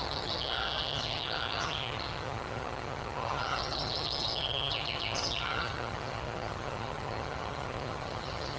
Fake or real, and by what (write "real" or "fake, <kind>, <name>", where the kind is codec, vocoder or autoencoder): fake, vocoder, HiFi-GAN